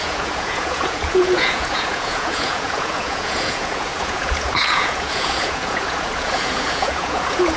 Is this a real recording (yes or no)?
no